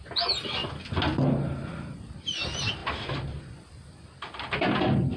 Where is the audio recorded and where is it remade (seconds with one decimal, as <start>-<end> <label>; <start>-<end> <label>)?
0.0-5.2 recorded